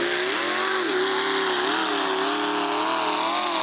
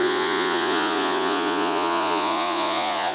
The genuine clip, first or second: first